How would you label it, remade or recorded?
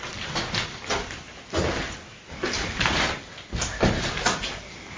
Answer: recorded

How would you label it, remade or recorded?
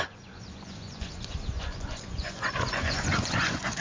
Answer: remade